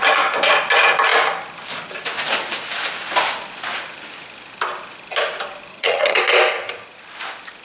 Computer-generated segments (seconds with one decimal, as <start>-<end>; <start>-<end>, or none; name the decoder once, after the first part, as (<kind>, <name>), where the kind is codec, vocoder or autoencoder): 5.7-6.2 (vocoder, HiFi-GAN)